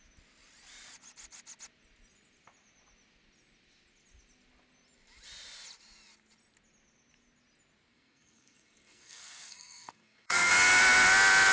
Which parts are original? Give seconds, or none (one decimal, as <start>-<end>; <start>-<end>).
0.0-7.9; 10.5-11.5